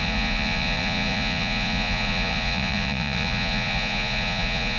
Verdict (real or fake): fake